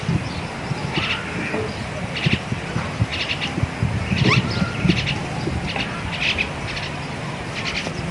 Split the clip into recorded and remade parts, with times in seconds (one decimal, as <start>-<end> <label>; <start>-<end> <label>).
0.0-8.1 recorded